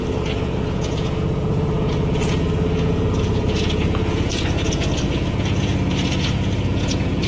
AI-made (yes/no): yes